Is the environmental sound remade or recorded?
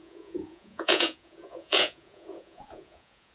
remade